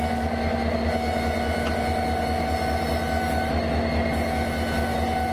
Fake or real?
real